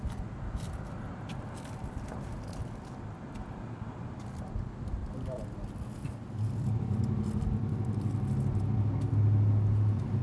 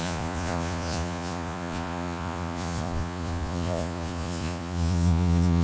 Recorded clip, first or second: first